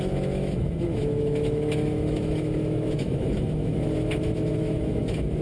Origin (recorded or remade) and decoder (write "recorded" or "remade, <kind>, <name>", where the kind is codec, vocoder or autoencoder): remade, autoencoder, DAC-VAE